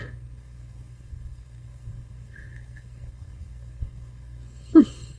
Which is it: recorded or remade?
remade